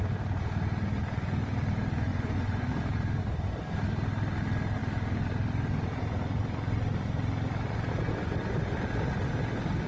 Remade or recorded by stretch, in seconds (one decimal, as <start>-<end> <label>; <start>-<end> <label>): 0.0-2.1 recorded; 2.1-2.7 remade; 2.7-9.9 recorded